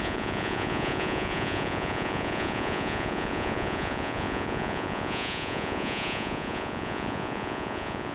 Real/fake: fake